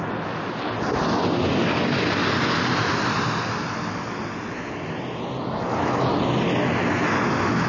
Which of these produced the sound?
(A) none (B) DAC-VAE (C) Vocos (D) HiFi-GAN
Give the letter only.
A